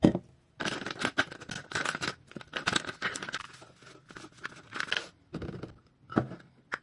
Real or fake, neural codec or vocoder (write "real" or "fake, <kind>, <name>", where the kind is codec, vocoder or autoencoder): real